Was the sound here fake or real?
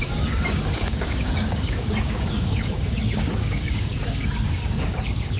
fake